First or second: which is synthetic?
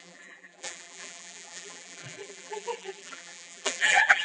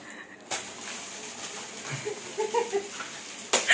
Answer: first